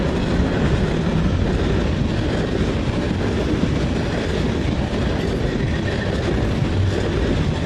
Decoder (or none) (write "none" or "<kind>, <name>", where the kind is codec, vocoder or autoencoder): none